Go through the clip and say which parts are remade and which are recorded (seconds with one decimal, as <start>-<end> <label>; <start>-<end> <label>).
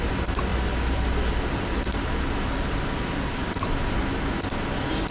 0.0-5.1 recorded